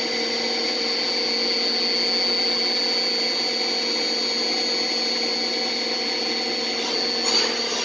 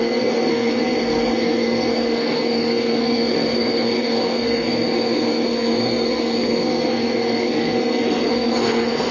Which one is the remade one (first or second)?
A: second